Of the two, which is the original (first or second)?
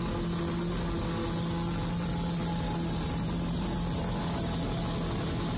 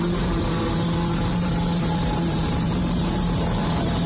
first